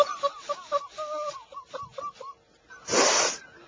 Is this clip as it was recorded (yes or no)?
yes